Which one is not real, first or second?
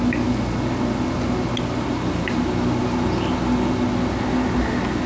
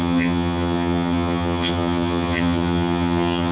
second